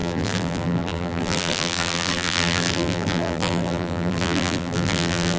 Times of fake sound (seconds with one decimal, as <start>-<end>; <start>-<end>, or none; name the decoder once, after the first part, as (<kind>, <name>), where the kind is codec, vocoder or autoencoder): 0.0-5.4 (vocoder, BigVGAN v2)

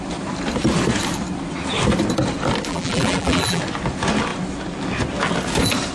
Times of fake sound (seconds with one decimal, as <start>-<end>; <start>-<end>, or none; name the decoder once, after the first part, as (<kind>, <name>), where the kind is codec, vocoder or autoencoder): 2.7-3.6 (vocoder, BigVGAN v2)

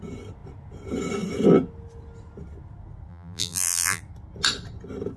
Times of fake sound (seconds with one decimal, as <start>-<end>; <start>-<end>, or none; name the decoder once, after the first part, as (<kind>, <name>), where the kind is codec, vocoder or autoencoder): 3.1-4.0 (vocoder, BigVGAN v2)

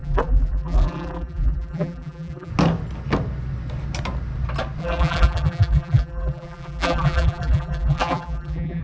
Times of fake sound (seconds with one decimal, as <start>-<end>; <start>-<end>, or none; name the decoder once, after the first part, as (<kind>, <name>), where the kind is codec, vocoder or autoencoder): 0.0-2.5 (vocoder, BigVGAN v2); 4.8-8.8

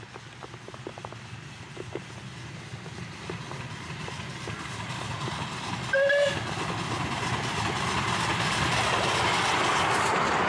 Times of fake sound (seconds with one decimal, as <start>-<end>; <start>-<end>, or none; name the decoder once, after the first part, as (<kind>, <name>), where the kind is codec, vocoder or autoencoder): none

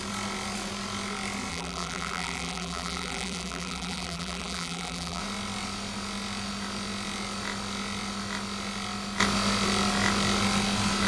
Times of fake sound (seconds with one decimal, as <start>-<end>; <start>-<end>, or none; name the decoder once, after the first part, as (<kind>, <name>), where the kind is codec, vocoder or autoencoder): 1.5-5.2 (vocoder, BigVGAN v2)

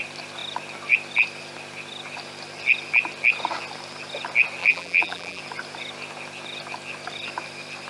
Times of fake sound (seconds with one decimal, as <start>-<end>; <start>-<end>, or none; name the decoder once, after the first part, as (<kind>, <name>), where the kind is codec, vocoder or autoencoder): 4.6-5.4 (vocoder, BigVGAN v2)

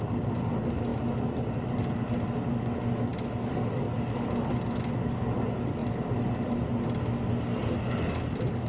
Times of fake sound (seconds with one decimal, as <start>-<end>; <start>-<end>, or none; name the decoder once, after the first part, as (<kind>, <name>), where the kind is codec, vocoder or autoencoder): 3.1-4.8 (vocoder, BigVGAN v2); 5.8-6.4